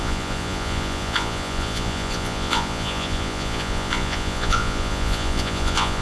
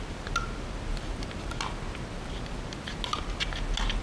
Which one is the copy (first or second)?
first